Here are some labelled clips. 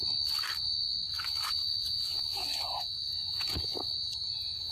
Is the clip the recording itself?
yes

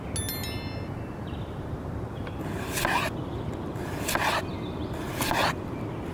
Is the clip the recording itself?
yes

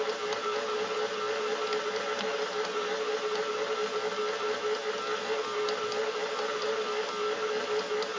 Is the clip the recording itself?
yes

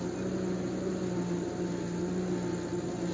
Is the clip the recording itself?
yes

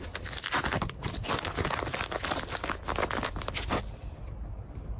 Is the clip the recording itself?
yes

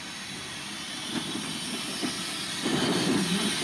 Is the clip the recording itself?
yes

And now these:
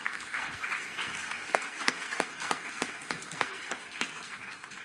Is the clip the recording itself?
no